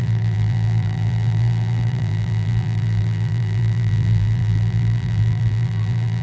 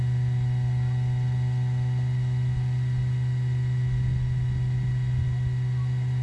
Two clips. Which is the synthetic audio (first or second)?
first